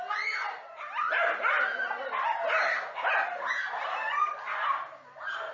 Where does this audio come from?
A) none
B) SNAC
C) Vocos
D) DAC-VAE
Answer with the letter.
A